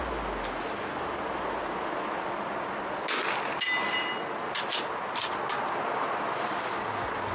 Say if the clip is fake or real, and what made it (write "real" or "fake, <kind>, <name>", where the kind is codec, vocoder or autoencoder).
real